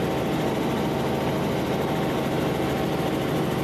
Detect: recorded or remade recorded